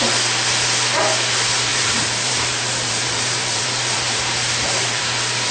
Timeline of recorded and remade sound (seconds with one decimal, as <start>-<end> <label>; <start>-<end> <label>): 0.0-1.7 recorded; 1.7-5.0 remade; 5.0-5.5 recorded